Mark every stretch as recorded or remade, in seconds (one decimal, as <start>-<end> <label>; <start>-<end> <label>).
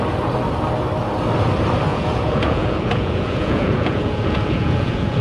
0.0-1.9 recorded; 1.9-5.2 remade